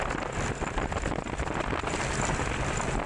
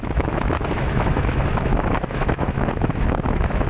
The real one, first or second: first